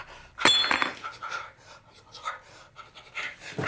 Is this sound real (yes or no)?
yes